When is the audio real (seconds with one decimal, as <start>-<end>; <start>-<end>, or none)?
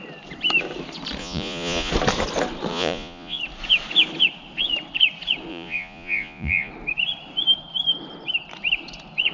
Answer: 0.0-1.2; 1.9-2.7; 3.4-5.5; 6.7-9.3